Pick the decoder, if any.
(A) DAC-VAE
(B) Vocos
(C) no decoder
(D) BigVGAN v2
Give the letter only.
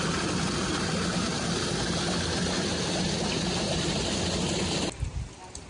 C